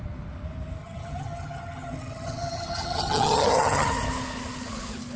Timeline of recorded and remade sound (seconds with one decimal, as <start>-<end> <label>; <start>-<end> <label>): 0.0-0.8 recorded; 0.8-3.9 remade; 3.9-5.2 recorded